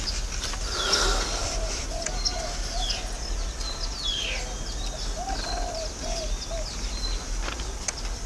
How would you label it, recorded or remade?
recorded